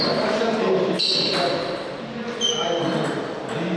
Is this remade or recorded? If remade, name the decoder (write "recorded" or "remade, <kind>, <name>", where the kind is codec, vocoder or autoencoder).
recorded